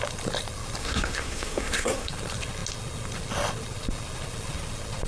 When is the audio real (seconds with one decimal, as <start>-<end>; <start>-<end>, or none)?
0.0-0.8; 2.1-5.1